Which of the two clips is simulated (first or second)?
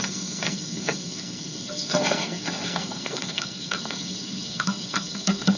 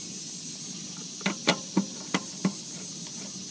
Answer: first